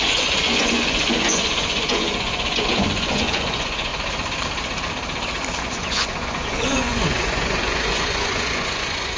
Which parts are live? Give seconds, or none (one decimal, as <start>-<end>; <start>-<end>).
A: 3.9-5.6